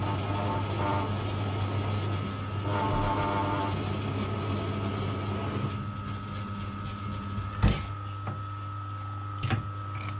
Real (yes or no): yes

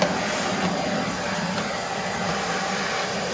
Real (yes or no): yes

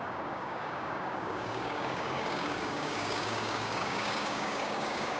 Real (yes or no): no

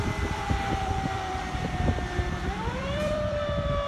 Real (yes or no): no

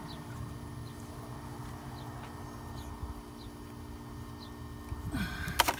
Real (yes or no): yes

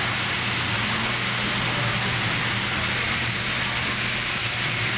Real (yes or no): yes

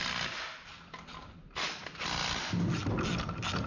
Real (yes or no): yes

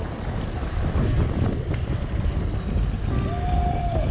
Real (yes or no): yes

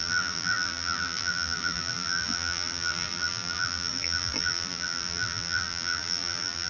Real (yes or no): no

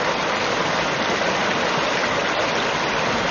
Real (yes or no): yes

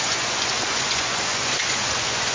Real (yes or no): no